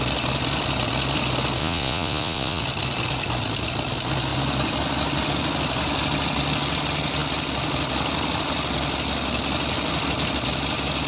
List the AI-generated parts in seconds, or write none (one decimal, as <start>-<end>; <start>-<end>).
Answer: 1.6-2.6